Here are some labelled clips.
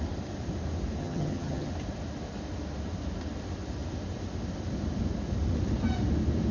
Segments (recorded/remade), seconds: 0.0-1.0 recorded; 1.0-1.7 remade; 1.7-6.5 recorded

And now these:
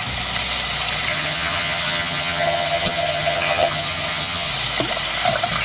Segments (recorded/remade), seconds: 0.0-1.1 recorded; 1.1-4.5 remade; 4.5-5.6 recorded

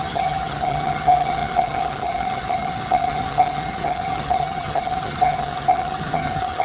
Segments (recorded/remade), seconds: 0.0-6.6 remade

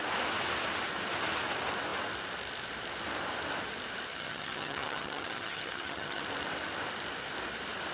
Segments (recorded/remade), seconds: 0.0-4.1 recorded; 4.1-6.2 remade; 6.2-7.9 recorded

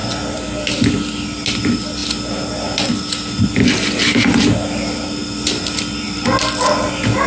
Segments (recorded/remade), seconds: 0.0-7.3 recorded

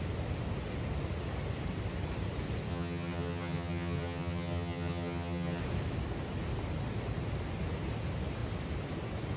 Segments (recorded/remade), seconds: 0.0-2.7 recorded; 2.7-5.6 remade; 5.6-9.4 recorded